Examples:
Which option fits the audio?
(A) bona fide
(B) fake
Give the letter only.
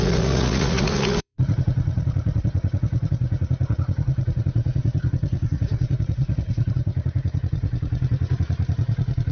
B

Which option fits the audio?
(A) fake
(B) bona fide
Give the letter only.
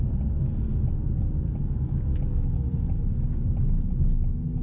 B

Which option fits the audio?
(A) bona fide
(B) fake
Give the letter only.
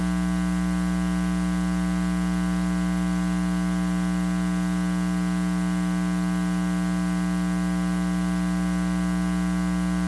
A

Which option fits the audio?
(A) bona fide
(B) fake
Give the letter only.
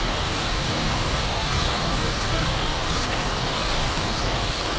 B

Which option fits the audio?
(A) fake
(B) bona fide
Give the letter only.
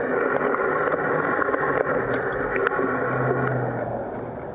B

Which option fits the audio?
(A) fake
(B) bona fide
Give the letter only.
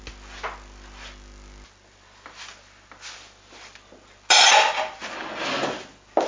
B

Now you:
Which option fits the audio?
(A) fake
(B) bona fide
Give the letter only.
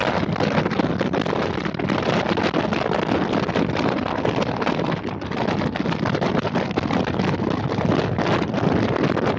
B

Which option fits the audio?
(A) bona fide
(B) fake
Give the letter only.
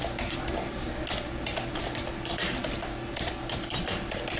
A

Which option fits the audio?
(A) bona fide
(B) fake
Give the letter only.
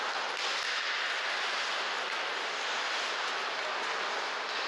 A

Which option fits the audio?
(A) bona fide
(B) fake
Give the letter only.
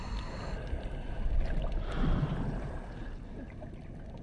A